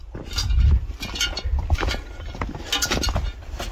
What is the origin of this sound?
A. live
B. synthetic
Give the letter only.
A